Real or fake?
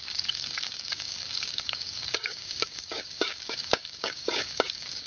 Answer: fake